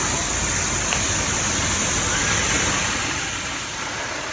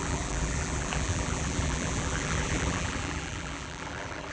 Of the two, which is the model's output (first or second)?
second